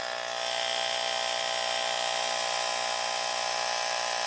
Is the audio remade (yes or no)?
no